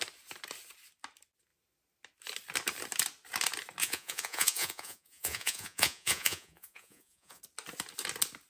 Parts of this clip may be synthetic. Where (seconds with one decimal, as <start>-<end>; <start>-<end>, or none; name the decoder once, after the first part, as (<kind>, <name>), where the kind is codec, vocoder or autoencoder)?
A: 3.8-7.4 (vocoder, Vocos)